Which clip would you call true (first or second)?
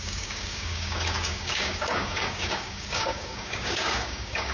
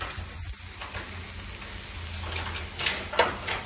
second